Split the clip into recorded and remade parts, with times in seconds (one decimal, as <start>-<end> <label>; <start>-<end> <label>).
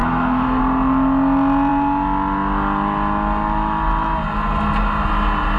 0.0-0.6 remade; 0.6-5.6 recorded